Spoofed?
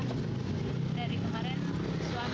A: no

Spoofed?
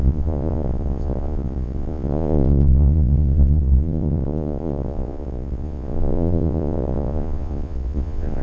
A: yes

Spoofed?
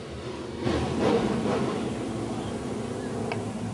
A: no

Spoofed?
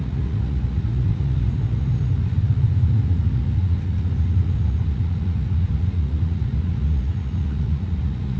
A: yes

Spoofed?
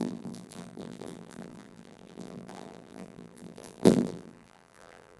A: yes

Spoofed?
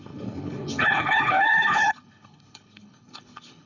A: yes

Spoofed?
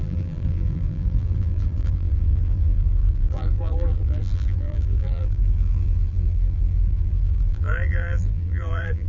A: yes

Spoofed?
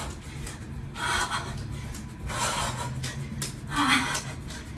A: no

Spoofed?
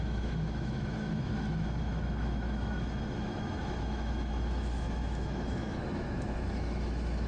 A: yes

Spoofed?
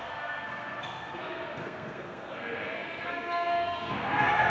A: yes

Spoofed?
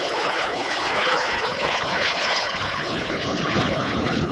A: yes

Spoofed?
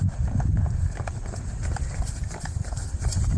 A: yes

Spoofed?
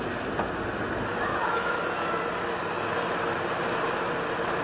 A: no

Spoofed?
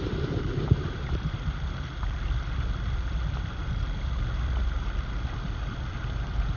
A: yes